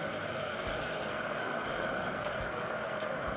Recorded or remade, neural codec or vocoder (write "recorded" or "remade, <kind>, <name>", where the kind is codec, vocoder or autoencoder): remade, codec, SNAC